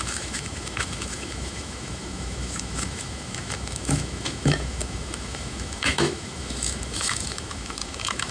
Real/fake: fake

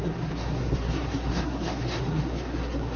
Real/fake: fake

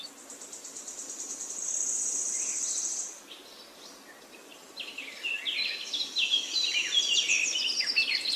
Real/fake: real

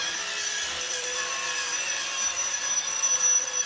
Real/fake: fake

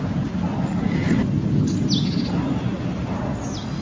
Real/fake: real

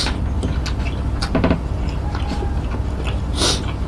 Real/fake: real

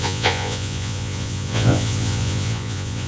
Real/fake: fake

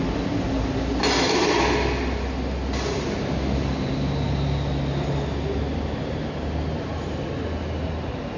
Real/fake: real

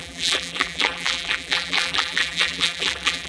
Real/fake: fake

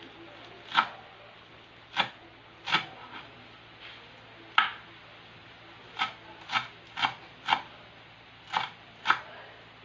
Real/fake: real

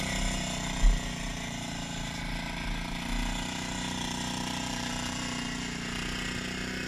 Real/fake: real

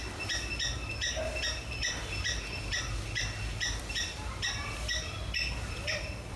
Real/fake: real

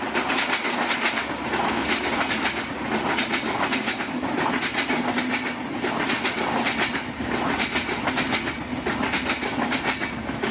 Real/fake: real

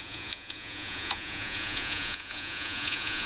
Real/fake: fake